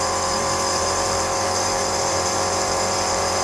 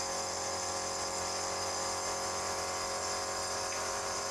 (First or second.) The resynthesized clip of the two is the first